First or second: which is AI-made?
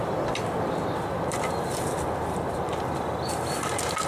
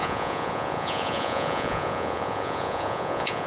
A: second